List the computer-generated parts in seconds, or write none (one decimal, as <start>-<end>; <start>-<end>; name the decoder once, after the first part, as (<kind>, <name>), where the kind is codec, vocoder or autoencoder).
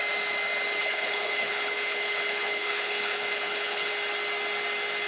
0.8-3.9 (codec, HILCodec)